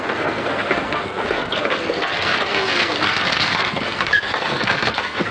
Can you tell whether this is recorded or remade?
remade